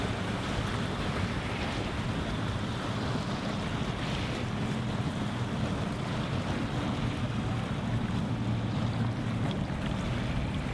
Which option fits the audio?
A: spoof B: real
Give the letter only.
B